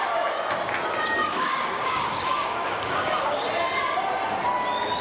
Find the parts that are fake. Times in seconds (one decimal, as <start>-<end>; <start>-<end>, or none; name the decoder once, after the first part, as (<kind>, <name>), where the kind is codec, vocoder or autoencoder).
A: 1.2-3.4 (codec, DAC)